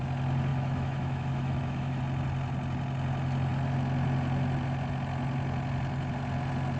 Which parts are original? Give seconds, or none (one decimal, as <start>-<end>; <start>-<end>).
0.0-0.5; 2.0-6.8